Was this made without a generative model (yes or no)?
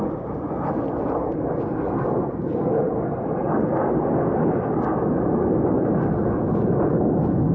yes